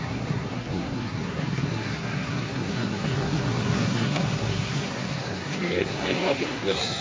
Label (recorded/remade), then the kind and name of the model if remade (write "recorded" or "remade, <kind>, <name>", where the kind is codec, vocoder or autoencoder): remade, codec, SNAC